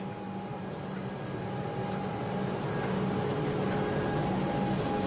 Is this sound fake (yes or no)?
no